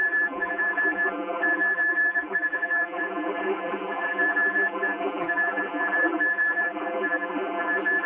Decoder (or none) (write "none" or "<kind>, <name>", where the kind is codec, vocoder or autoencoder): vocoder, BigVGAN v2